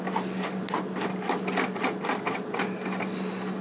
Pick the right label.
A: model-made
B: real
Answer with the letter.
B